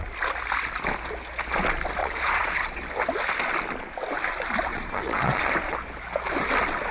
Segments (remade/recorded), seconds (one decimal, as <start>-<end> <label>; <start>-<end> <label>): 0.0-2.0 recorded; 2.0-2.9 remade; 2.9-4.7 recorded; 4.7-5.5 remade; 5.5-6.9 recorded